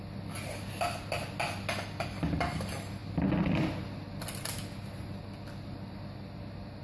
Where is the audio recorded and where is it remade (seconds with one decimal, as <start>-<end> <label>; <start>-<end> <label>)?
0.0-6.8 recorded